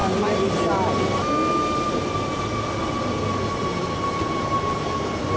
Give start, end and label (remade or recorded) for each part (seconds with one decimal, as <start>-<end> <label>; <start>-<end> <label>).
0.0-5.4 recorded